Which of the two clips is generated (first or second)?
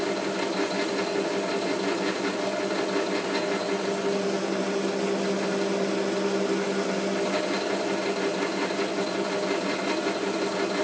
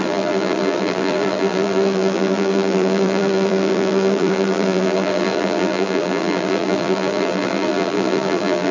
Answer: second